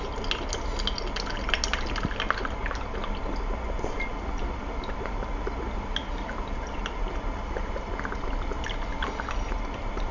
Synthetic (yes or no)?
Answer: no